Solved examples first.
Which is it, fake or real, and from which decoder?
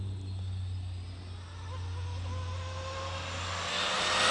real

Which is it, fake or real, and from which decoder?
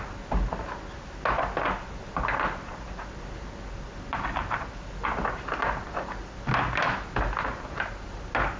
real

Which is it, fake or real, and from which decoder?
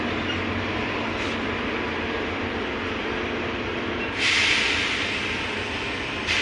fake, vocoder, BigVGAN v2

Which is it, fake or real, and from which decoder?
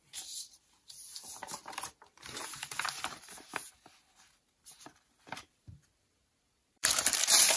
fake, vocoder, BigVGAN v2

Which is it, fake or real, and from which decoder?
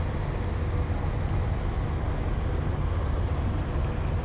real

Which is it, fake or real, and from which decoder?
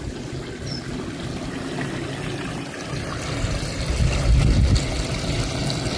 real